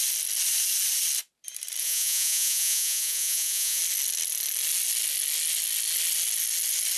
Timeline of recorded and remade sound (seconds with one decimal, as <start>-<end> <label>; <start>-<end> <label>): 0.0-1.8 recorded; 1.8-3.8 remade; 3.8-7.0 recorded